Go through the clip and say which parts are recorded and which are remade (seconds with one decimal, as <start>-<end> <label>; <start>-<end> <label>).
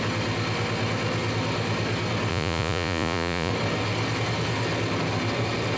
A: 0.0-2.3 recorded; 2.3-3.5 remade; 3.5-5.8 recorded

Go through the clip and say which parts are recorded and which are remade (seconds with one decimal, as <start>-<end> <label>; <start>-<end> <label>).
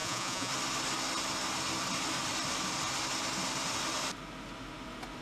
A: 0.0-0.5 remade; 0.5-5.2 recorded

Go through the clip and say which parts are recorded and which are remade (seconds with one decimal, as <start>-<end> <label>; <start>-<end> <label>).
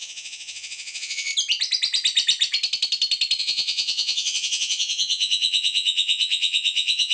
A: 0.0-1.3 remade; 1.3-3.4 recorded; 3.4-7.1 remade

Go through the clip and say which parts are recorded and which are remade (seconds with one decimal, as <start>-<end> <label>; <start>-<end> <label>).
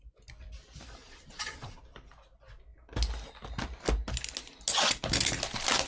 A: 0.0-1.0 recorded; 1.0-1.8 remade; 1.8-5.9 recorded